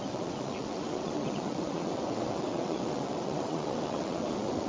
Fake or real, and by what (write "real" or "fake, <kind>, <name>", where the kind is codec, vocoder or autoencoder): fake, vocoder, WaveNeXt